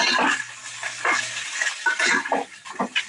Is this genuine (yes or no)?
yes